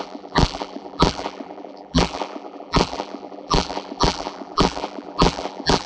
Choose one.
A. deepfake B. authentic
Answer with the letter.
A